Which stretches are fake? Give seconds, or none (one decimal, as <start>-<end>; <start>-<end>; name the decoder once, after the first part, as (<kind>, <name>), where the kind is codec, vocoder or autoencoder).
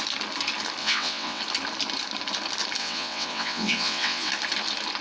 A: 0.8-1.4 (vocoder, WaveNeXt); 2.8-4.3